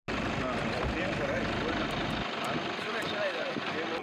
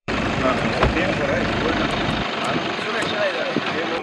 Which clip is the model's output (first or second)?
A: second